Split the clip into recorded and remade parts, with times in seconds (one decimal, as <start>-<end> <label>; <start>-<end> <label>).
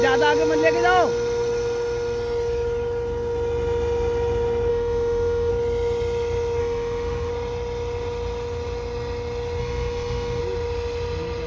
0.0-4.7 recorded; 4.7-5.5 remade; 5.5-6.6 recorded; 6.6-7.3 remade; 7.3-9.6 recorded; 9.6-10.4 remade; 10.4-11.5 recorded